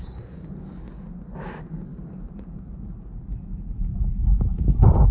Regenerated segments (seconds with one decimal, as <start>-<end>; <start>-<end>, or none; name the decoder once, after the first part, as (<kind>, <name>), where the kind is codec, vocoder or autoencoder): 1.9-5.1 (vocoder, BigVGAN v2)